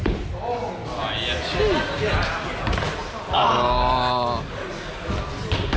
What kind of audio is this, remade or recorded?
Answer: recorded